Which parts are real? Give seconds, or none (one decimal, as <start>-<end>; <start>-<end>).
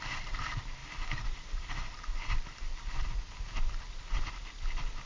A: 0.0-0.8; 3.9-5.1